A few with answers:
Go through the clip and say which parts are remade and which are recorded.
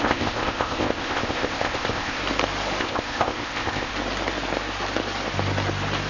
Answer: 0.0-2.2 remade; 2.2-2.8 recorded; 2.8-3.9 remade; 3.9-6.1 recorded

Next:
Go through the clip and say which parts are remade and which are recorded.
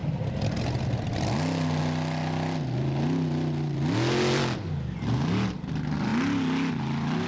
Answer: 0.0-7.3 recorded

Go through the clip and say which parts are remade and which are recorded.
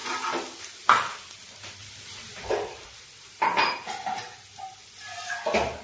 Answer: 0.0-5.8 recorded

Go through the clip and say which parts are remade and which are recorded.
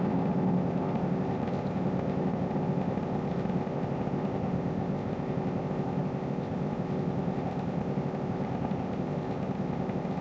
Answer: 0.0-10.2 remade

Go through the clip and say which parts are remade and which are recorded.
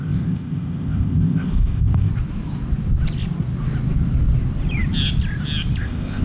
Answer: 0.0-2.1 remade; 2.1-5.8 recorded; 5.8-6.2 remade